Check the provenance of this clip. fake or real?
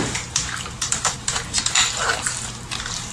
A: fake